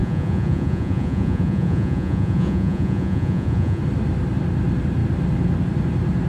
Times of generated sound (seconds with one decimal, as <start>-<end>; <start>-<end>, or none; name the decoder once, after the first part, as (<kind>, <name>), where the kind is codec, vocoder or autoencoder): 0.0-3.8 (vocoder, Vocos)